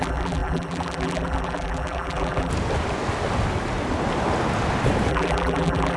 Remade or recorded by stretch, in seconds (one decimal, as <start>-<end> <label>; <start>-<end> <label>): 0.0-2.5 remade; 2.5-5.1 recorded; 5.1-6.0 remade